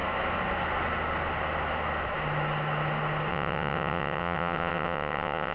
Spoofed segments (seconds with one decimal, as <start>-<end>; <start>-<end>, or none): 3.3-5.5